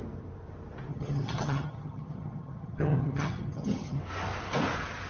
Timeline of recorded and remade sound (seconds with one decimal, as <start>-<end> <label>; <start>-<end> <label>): 0.0-0.9 recorded; 0.9-4.0 remade; 4.0-5.1 recorded